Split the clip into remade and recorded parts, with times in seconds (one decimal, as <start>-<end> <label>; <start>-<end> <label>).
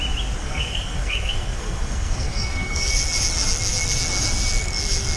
0.0-0.4 recorded; 0.4-2.9 remade; 2.9-5.2 recorded